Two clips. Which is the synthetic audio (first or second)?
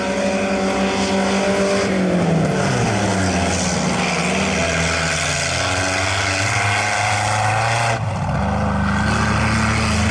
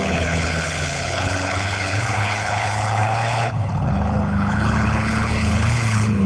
second